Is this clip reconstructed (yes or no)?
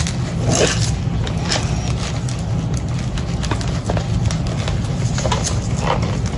no